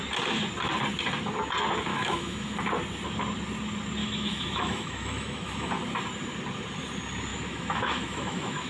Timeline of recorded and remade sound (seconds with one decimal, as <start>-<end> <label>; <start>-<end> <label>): 0.0-1.9 recorded; 1.9-2.6 remade; 2.6-4.0 recorded; 4.0-5.7 remade; 5.7-7.3 recorded; 7.3-8.7 remade